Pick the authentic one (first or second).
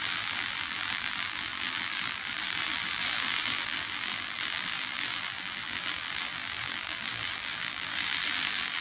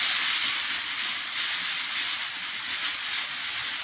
second